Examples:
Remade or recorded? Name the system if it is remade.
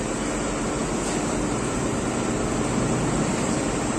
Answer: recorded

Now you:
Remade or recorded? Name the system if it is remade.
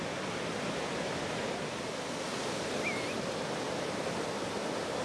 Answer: recorded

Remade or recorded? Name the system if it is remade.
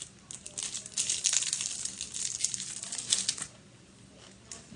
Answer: recorded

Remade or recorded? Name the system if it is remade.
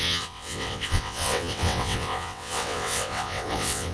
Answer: remade, vocoder, WaveNeXt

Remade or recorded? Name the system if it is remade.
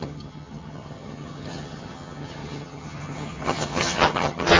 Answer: remade, vocoder, HiFi-GAN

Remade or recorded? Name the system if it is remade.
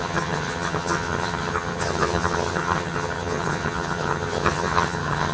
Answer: remade, vocoder, HiFi-GAN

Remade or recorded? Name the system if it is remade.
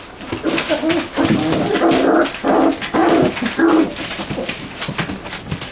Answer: recorded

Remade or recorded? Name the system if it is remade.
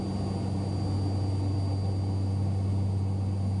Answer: recorded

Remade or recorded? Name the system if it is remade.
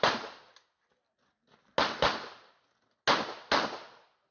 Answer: recorded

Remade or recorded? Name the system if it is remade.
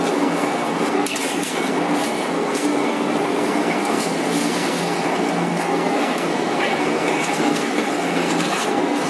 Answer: remade, codec, SNAC